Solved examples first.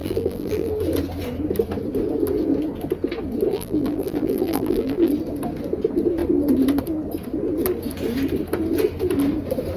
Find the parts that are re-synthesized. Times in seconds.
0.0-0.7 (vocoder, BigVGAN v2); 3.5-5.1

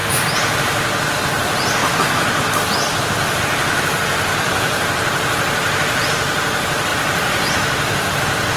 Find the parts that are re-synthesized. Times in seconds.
1.2-8.6 (vocoder, BigVGAN v2)